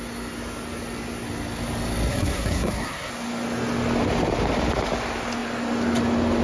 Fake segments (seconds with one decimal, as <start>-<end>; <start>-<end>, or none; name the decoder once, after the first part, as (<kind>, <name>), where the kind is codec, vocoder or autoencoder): 2.1-3.1 (codec, SNAC)